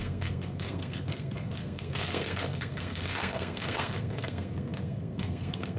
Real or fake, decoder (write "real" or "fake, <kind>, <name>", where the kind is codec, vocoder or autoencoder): fake, codec, SNAC